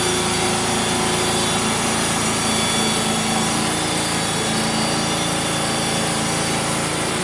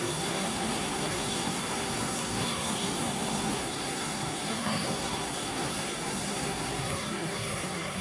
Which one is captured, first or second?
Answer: first